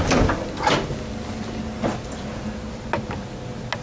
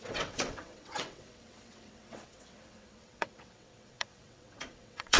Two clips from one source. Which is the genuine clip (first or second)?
first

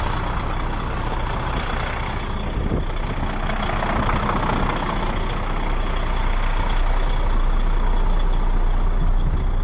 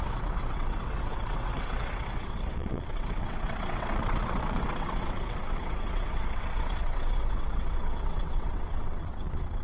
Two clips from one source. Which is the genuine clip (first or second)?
first